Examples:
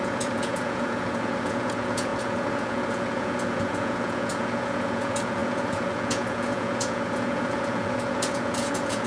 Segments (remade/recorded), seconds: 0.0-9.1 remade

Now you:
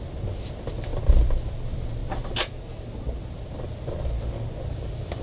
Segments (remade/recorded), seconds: 0.0-5.2 recorded